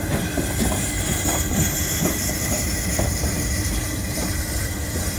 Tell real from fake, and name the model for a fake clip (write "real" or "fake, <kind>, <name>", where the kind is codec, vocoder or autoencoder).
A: fake, vocoder, BigVGAN v2